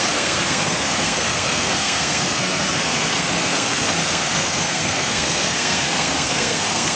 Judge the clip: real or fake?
fake